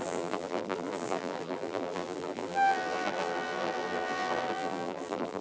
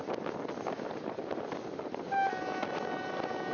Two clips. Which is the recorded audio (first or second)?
second